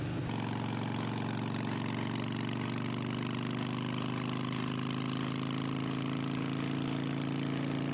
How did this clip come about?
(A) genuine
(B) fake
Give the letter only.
A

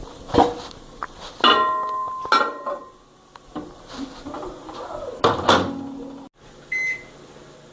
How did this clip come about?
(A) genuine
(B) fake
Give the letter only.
A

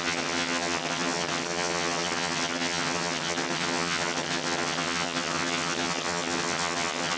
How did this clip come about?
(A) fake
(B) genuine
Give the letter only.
A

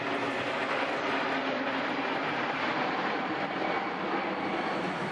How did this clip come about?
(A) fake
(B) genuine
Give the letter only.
A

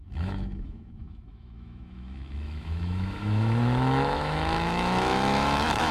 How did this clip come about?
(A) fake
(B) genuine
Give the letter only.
A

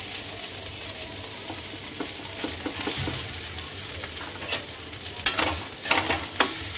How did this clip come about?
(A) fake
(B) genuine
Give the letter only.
B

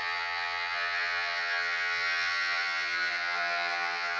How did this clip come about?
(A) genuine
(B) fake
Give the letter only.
B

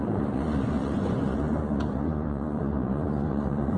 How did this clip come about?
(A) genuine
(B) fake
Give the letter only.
B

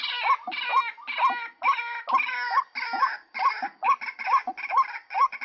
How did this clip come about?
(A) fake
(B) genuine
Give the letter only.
B